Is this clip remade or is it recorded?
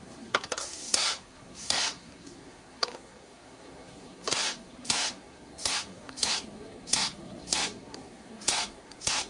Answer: remade